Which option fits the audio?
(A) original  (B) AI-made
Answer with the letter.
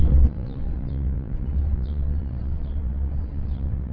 B